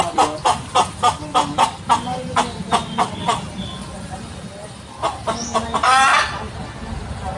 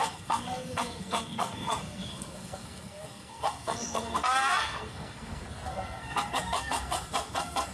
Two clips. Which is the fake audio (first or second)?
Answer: second